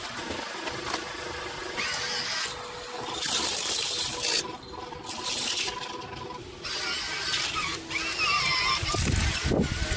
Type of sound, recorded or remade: recorded